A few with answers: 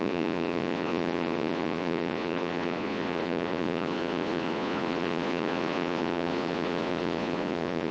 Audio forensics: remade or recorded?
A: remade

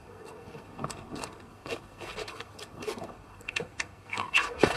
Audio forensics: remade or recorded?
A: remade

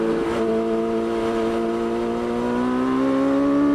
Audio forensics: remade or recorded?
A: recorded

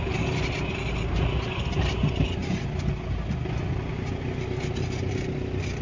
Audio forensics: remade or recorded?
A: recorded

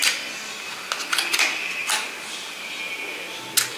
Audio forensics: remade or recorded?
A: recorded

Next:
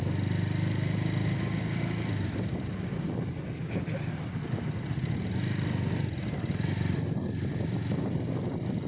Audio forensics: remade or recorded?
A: recorded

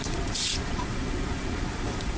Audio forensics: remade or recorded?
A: remade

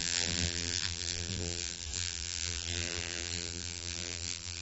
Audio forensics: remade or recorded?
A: remade